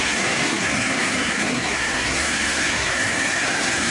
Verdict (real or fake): fake